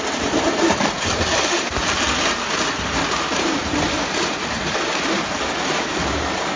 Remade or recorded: remade